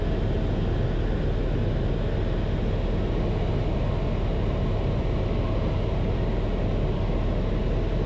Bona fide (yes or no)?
yes